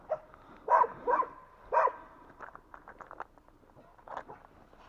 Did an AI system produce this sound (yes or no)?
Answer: no